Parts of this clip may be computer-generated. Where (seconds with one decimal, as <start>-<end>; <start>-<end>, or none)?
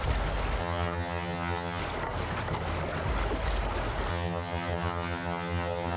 0.6-1.8; 4.1-6.0